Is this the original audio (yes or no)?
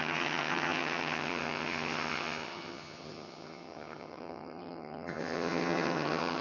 no